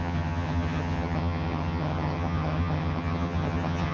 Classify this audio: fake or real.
fake